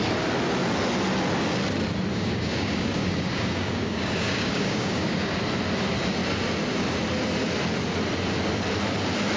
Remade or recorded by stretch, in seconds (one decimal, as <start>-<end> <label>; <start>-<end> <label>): 0.0-2.1 recorded; 2.1-5.4 remade; 5.4-9.4 recorded